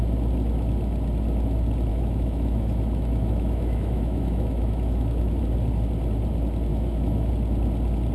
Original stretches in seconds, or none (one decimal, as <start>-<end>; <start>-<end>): 0.0-1.9; 5.4-6.7; 7.3-8.1